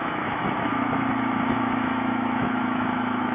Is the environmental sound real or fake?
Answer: fake